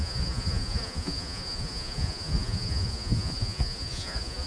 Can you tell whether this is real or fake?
fake